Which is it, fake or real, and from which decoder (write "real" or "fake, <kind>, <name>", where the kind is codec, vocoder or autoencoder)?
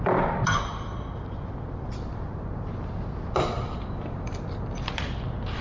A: real